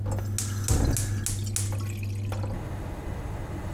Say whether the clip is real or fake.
real